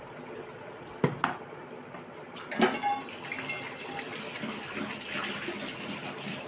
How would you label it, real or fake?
real